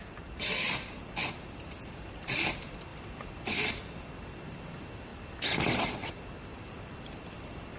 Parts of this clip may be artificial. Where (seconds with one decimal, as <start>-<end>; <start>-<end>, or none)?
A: 2.9-3.7; 6.5-7.8